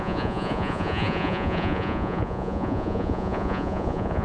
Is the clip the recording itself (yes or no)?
no